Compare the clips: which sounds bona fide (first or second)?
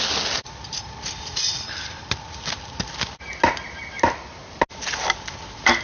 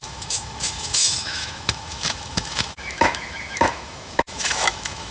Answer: first